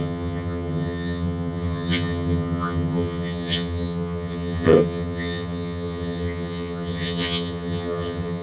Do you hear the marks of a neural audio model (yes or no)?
yes